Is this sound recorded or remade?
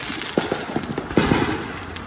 recorded